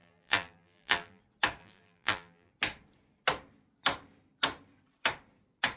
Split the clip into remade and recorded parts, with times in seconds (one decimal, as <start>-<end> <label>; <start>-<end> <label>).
0.0-1.2 remade; 1.2-1.6 recorded; 1.6-2.5 remade; 2.5-5.8 recorded